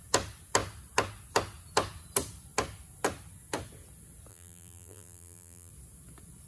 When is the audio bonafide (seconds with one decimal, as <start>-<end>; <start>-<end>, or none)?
0.0-4.3; 5.7-6.5

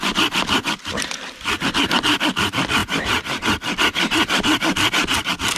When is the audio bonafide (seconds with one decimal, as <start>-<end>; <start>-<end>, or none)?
0.0-5.6

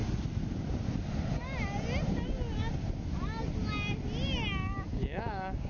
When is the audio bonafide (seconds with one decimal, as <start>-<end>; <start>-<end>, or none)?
0.0-4.9

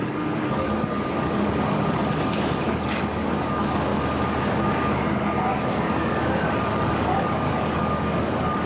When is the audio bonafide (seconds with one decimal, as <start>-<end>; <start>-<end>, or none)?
3.9-4.6

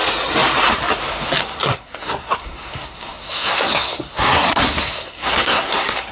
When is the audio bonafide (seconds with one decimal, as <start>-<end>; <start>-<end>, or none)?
0.0-1.4